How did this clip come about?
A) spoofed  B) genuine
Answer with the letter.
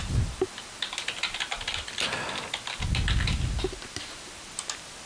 B